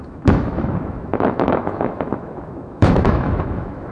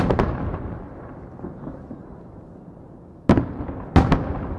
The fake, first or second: first